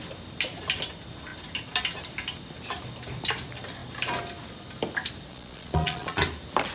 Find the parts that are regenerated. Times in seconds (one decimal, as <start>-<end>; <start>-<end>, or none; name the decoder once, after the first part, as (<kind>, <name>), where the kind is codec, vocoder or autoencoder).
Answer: 5.3-6.2 (vocoder, Vocos)